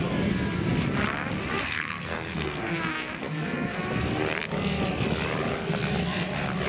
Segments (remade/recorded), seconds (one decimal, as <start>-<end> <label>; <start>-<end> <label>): 0.0-1.6 recorded; 1.6-3.8 remade; 3.8-6.7 recorded